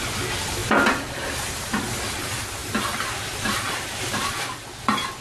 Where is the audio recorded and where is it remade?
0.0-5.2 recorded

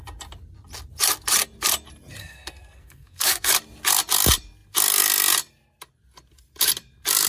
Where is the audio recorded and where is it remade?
0.0-2.2 recorded; 2.2-3.5 remade; 3.5-7.3 recorded